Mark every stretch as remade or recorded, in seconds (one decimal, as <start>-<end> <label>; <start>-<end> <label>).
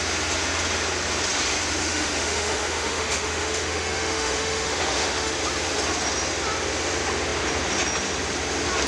0.0-1.8 recorded; 1.8-5.3 remade; 5.3-8.9 recorded